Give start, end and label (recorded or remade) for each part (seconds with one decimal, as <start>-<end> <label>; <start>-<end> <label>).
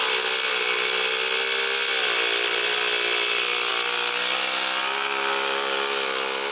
0.0-6.5 recorded